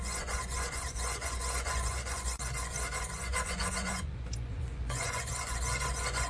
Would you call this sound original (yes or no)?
no